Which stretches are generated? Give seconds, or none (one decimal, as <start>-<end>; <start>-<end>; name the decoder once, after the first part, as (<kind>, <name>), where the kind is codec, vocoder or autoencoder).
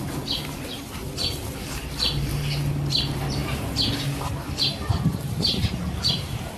0.0-3.4 (vocoder, BigVGAN v2); 4.5-6.6